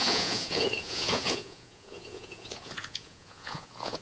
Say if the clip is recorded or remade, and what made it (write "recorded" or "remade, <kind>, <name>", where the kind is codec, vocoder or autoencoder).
remade, vocoder, Vocos